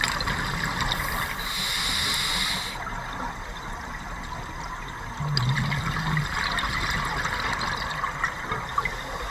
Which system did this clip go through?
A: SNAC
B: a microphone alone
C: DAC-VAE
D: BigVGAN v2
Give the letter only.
B